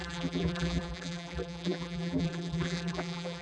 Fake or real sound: fake